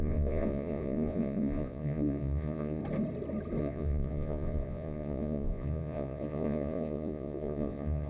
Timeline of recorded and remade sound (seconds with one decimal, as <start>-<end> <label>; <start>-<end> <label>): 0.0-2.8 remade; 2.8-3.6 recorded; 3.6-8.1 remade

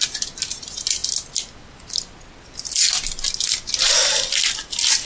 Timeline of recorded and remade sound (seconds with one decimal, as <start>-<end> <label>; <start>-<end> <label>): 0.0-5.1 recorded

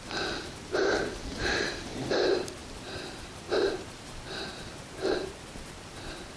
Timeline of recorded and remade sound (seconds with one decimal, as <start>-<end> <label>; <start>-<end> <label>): 0.0-6.4 recorded

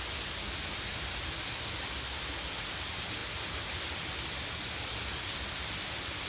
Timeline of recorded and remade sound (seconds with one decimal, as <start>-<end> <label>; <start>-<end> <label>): 0.0-6.3 recorded

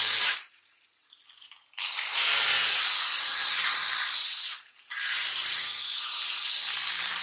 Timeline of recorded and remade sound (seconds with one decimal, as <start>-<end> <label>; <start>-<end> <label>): 0.0-7.2 remade